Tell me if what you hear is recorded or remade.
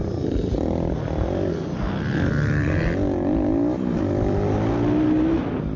recorded